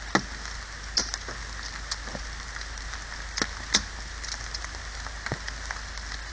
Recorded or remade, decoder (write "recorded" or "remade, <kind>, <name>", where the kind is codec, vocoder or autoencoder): recorded